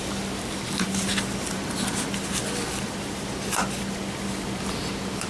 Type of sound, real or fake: real